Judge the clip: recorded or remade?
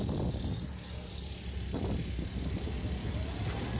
recorded